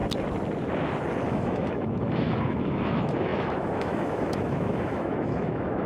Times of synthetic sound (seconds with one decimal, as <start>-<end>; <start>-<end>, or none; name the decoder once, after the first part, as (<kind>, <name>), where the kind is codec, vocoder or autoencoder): 1.3-5.9 (autoencoder, DAC-VAE)